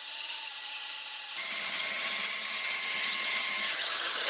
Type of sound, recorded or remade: remade